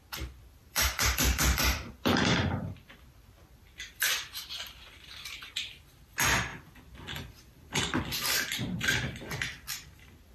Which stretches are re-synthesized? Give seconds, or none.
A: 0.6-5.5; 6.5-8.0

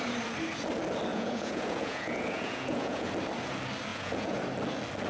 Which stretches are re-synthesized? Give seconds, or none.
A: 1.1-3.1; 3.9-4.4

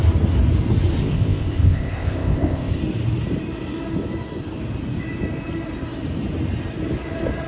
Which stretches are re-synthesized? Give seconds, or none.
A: 1.0-2.8

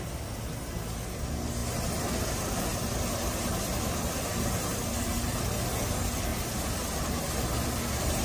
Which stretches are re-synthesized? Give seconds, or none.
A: 2.7-4.7

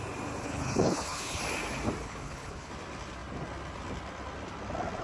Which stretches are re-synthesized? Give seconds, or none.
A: 0.4-1.4; 2.0-2.7

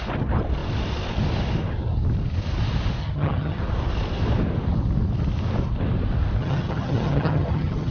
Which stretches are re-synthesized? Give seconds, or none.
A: 3.0-3.6; 6.4-7.9

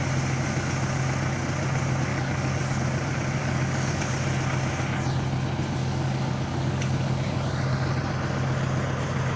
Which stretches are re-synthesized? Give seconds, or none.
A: 2.1-2.8; 3.4-4.1; 5.8-7.9